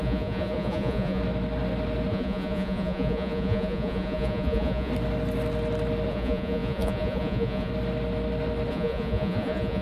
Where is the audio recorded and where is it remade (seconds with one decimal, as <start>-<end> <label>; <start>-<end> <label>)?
0.0-1.2 remade; 1.2-2.1 recorded; 2.1-4.9 remade; 4.9-6.1 recorded; 6.1-7.7 remade; 7.7-8.7 recorded; 8.7-9.8 remade